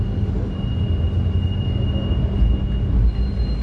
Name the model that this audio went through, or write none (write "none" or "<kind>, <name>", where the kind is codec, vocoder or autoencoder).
none